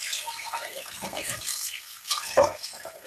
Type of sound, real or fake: fake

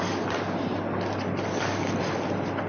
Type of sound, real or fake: real